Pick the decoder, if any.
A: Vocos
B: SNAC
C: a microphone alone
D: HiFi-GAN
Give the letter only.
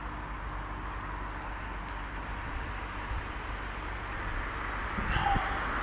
C